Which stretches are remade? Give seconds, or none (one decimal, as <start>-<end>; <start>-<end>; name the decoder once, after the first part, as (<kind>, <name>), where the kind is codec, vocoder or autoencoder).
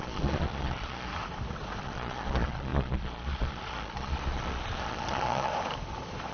0.0-1.1 (vocoder, Vocos); 1.8-5.5